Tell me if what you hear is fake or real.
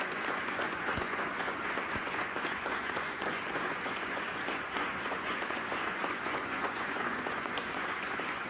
fake